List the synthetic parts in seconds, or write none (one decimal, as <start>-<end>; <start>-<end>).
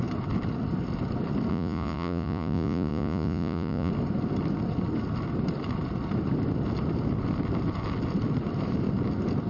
1.5-3.9